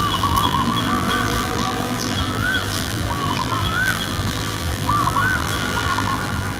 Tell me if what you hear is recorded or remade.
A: remade